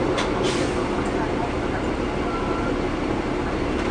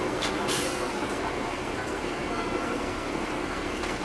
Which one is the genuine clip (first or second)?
first